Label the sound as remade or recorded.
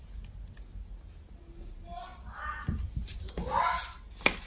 recorded